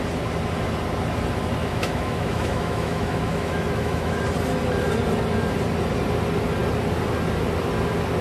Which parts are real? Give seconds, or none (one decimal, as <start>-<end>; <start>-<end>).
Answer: 0.0-1.6; 4.2-8.2